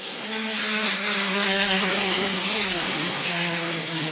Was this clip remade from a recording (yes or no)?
yes